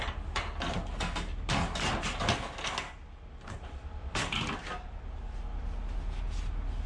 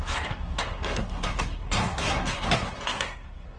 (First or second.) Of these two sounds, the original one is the first